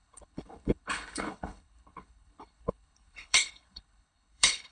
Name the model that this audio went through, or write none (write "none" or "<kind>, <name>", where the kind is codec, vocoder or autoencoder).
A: codec, HILCodec